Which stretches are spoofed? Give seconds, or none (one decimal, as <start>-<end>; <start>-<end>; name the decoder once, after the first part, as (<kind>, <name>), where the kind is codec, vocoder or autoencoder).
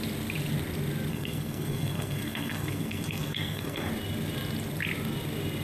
1.1-3.9 (codec, SNAC)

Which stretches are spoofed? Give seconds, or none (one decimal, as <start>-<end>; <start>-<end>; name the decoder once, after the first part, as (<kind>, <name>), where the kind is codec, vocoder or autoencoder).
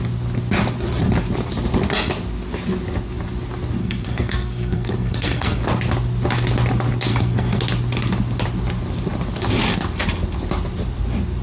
3.8-5.6 (codec, SNAC); 7.1-7.6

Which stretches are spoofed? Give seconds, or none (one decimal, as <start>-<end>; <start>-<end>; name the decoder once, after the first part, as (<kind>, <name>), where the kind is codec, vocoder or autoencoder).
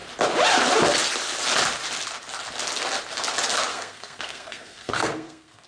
3.7-5.7 (codec, SNAC)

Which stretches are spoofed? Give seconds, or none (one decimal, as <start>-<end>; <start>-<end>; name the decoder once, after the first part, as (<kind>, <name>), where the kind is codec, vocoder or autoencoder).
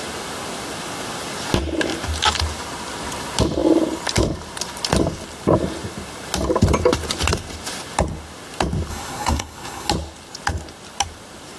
8.9-9.9 (codec, SNAC)